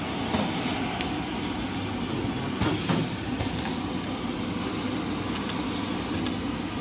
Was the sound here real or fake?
real